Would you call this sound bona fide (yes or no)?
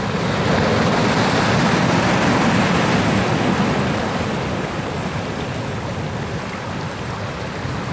yes